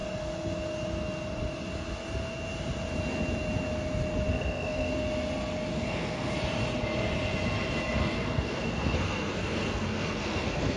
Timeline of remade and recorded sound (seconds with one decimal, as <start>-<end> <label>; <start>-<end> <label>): 0.0-4.3 recorded; 4.3-4.9 remade; 4.9-5.7 recorded; 5.7-6.3 remade; 6.3-8.0 recorded; 8.0-10.8 remade